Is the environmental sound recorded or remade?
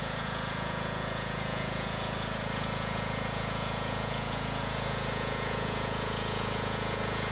remade